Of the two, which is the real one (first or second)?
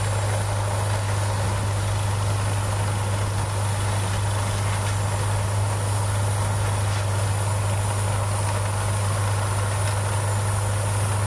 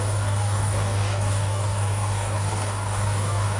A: first